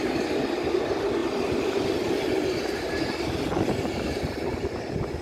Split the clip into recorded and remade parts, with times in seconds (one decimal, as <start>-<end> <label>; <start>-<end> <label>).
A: 0.0-1.2 recorded; 1.2-4.3 remade; 4.3-5.2 recorded